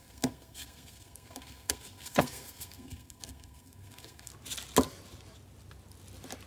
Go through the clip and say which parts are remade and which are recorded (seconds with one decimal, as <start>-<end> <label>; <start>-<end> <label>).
0.0-4.3 remade; 4.3-6.5 recorded